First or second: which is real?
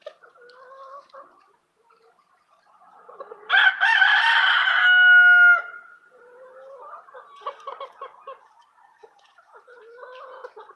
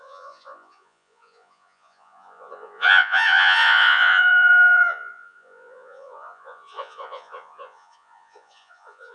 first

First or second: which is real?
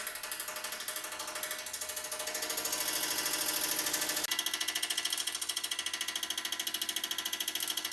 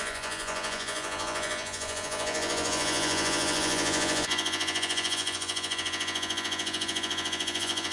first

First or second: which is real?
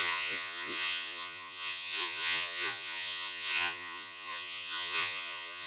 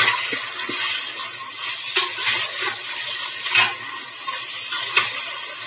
second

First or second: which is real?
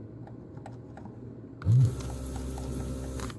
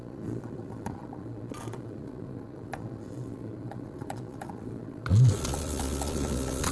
first